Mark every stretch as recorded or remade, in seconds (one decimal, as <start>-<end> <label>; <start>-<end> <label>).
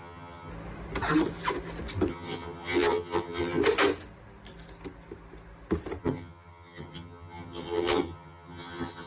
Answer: 0.0-0.5 remade; 0.5-2.1 recorded; 2.1-3.6 remade; 3.6-6.0 recorded; 6.0-9.1 remade